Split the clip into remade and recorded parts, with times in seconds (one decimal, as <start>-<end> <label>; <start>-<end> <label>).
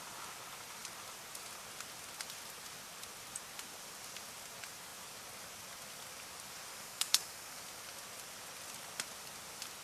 0.0-6.7 recorded; 6.7-7.6 remade; 7.6-9.8 recorded